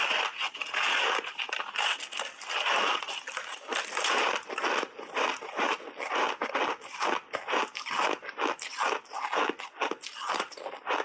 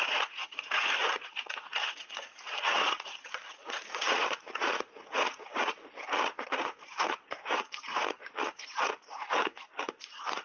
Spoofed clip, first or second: second